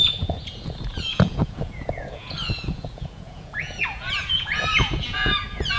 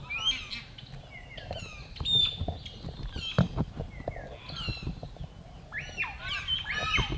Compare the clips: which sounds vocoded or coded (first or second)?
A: first